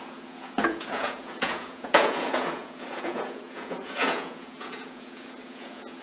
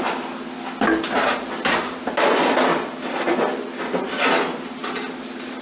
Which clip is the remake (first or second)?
first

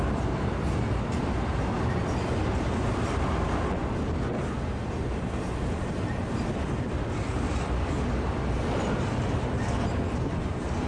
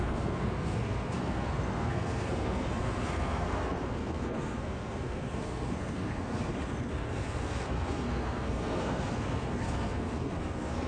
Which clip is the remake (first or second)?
second